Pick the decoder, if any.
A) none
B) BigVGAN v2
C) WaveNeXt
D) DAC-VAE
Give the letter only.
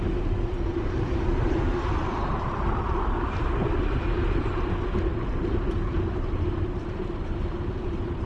A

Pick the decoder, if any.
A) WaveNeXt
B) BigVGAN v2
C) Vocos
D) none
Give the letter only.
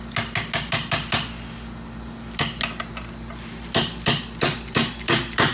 D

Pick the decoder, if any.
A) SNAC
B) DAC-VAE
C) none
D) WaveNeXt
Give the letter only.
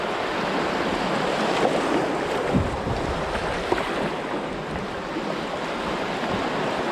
C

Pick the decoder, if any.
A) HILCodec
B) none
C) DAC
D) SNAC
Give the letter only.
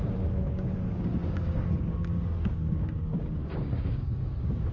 C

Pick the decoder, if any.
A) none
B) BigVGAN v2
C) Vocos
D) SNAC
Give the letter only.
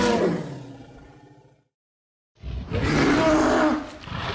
A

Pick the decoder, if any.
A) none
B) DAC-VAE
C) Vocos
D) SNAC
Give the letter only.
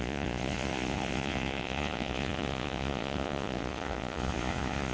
C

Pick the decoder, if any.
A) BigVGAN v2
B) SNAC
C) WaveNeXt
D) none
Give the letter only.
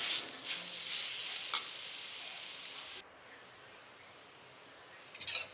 D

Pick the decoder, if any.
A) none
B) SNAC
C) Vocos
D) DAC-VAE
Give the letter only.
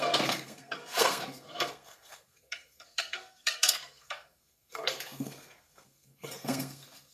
B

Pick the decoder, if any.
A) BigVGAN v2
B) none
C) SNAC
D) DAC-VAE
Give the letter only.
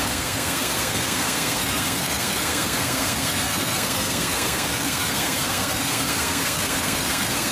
C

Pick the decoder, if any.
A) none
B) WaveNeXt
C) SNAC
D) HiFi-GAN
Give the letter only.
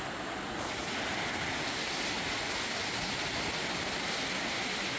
A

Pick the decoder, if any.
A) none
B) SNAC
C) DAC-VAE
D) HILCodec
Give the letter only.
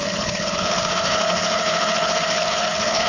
D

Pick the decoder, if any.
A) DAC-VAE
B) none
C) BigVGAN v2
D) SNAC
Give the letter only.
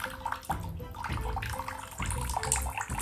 B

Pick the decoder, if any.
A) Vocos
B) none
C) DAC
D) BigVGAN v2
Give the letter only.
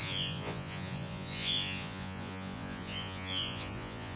A